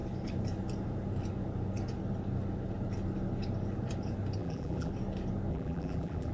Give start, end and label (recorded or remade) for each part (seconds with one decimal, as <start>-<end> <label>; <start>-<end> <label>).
0.0-4.4 recorded; 4.4-4.9 remade; 4.9-5.5 recorded; 5.5-6.3 remade